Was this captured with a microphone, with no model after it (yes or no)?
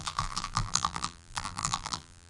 no